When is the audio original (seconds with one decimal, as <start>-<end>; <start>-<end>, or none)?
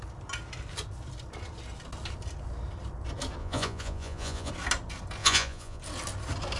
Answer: 0.0-3.4; 4.5-5.2; 5.8-6.6